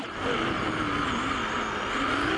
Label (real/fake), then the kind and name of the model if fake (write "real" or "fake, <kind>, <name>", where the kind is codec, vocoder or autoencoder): real